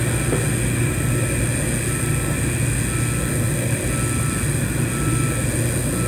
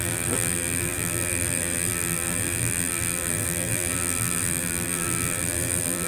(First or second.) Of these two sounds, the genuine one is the first